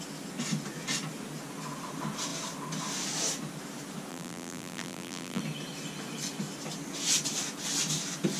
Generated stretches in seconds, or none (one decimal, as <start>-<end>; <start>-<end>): 4.1-5.4